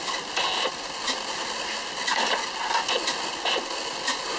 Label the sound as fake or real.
real